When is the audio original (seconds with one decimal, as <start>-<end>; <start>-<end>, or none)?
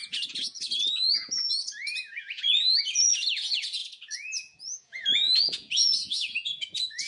none